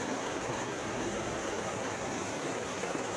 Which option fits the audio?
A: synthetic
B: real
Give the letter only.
A